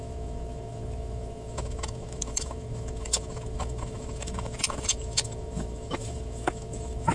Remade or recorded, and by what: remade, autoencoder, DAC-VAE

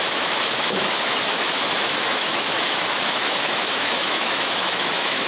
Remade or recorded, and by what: remade, autoencoder, DAC-VAE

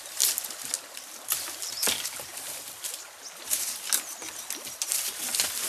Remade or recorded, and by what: recorded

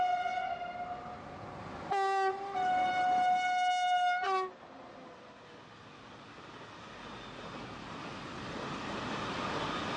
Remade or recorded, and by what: recorded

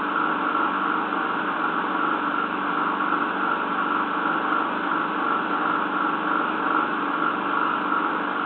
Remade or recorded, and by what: recorded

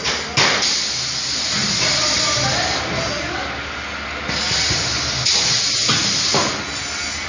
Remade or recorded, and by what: recorded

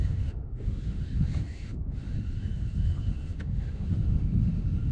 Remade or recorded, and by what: remade, autoencoder, DAC-VAE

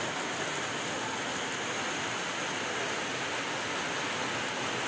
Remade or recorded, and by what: recorded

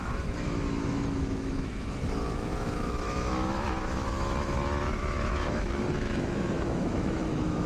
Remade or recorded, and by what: remade, autoencoder, DAC-VAE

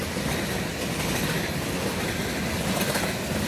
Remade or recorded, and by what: recorded